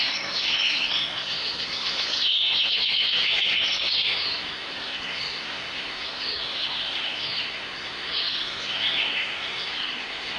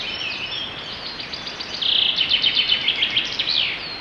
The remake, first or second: first